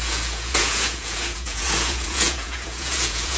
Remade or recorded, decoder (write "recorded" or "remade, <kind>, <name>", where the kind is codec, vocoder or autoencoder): remade, vocoder, Vocos